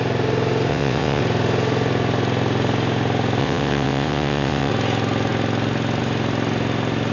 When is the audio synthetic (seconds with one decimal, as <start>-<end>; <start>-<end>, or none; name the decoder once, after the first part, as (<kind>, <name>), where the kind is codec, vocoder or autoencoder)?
0.7-1.2 (vocoder, WaveNeXt); 3.4-4.7